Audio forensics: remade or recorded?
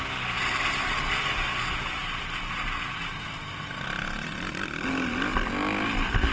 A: recorded